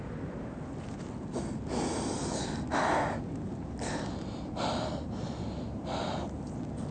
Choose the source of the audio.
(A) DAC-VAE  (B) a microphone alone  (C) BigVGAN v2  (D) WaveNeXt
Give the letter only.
B